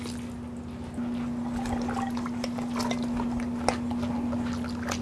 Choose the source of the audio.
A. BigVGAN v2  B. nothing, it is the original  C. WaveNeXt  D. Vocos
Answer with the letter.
B